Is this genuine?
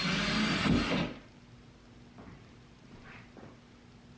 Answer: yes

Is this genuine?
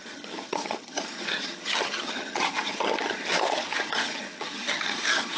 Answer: no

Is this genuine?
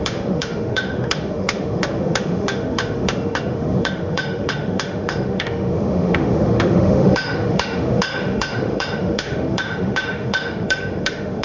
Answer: no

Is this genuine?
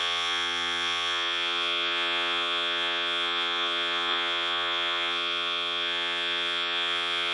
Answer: no